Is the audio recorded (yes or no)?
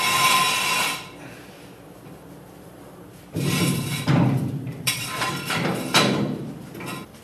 no